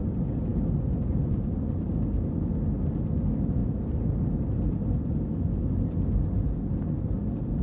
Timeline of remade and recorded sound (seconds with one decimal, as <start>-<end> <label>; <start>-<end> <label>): 0.0-7.6 recorded